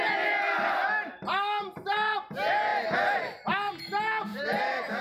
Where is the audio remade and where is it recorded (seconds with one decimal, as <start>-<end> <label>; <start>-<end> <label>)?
0.0-4.3 recorded; 4.3-5.0 remade